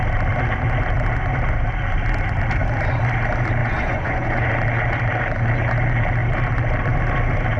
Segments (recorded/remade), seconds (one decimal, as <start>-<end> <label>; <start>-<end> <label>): 0.0-3.6 recorded; 3.6-4.5 remade; 4.5-7.6 recorded

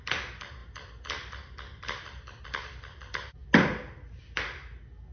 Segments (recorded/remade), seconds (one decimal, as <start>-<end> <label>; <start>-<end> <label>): 0.0-5.1 recorded

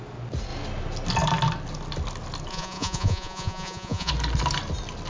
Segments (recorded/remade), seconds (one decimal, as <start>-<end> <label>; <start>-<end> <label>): 0.0-2.5 recorded; 2.5-4.1 remade; 4.1-5.1 recorded

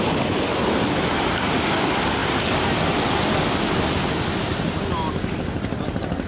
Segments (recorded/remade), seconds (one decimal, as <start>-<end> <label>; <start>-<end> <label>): 0.0-6.3 recorded

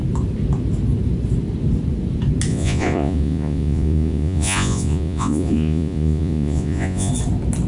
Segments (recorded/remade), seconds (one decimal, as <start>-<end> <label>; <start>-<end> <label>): 0.0-2.5 recorded; 2.5-7.1 remade; 7.1-7.7 recorded

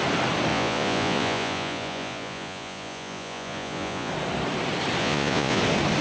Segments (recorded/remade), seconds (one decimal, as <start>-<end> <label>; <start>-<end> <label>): 0.0-0.5 recorded; 0.5-4.1 remade; 4.1-5.0 recorded; 5.0-5.6 remade; 5.6-6.0 recorded